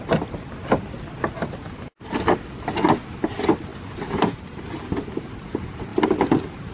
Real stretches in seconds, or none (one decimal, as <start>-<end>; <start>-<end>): 0.0-6.7